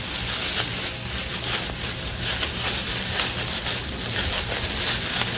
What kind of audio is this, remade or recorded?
recorded